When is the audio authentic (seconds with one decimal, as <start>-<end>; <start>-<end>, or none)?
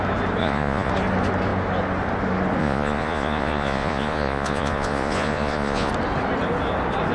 0.0-0.4; 0.9-2.6; 5.9-7.1